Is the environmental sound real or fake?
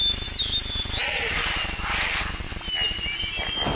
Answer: real